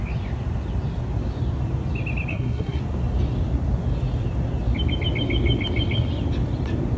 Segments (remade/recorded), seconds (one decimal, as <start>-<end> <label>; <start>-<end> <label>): 0.0-2.3 recorded; 2.3-2.8 remade; 2.8-7.0 recorded